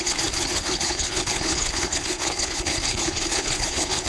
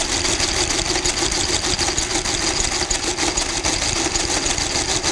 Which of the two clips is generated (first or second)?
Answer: first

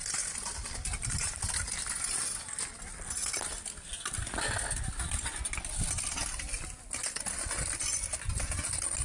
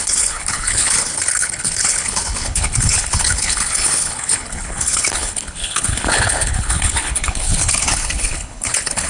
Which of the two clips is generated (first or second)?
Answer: second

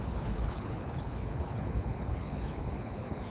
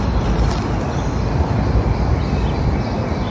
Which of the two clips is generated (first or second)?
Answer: first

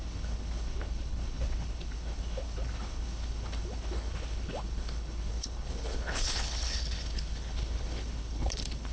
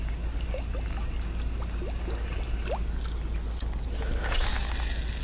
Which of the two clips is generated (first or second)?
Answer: first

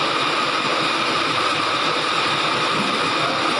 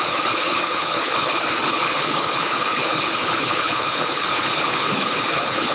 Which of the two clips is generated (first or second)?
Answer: second